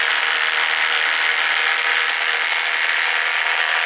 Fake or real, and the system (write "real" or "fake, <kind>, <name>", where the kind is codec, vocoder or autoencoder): real